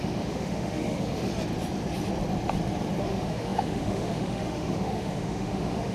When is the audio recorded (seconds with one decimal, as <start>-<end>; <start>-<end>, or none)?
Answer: 1.3-3.0